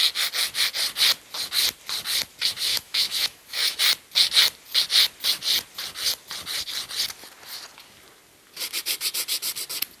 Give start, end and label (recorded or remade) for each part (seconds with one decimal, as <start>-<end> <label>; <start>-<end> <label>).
0.0-2.7 recorded; 2.7-3.8 remade; 3.8-10.0 recorded